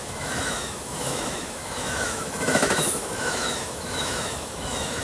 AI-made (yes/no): yes